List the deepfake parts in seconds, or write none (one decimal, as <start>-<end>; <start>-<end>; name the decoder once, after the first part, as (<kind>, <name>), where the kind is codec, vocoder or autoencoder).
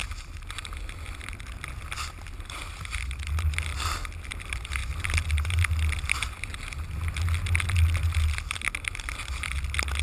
none